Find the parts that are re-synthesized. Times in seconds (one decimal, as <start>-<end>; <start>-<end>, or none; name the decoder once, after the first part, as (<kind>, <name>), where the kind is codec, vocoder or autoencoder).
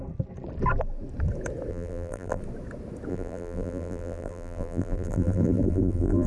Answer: 1.7-2.4 (vocoder, BigVGAN v2); 3.1-6.3